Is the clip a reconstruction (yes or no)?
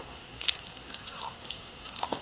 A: yes